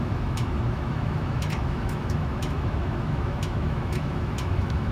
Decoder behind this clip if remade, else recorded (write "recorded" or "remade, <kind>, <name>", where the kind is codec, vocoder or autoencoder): remade, autoencoder, DAC-VAE